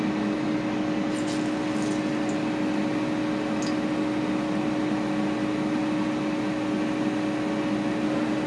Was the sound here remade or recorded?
recorded